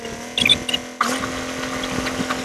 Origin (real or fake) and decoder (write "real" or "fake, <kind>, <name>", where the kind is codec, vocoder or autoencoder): real